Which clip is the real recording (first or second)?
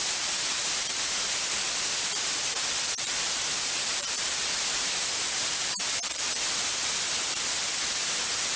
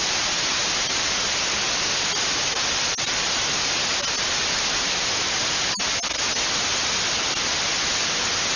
second